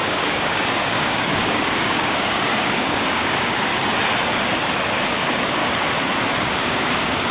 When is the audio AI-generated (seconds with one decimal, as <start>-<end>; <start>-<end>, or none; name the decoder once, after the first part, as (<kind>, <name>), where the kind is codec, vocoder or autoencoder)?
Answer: 0.0-3.7 (codec, DAC); 5.0-5.6; 6.4-7.3